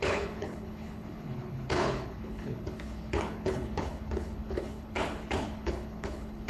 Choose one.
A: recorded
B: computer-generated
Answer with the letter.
B